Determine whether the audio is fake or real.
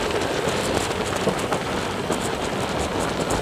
real